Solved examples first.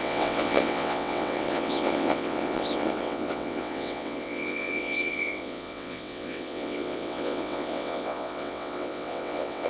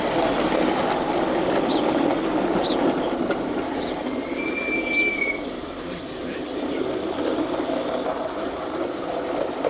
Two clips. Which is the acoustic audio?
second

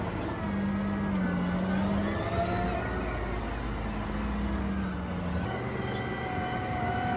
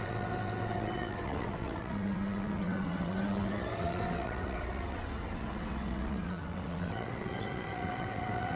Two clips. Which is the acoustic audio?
first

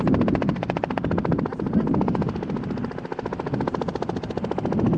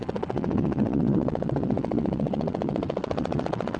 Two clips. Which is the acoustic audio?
first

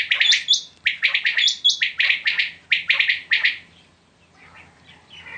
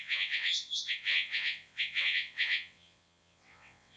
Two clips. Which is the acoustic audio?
first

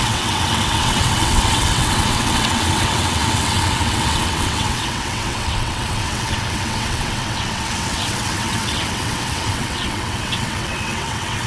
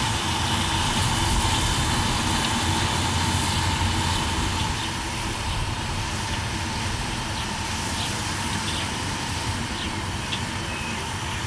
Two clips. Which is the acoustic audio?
second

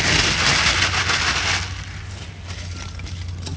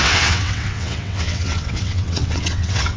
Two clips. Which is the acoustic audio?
first